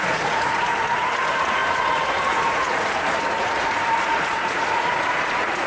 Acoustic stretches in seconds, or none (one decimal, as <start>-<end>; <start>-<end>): none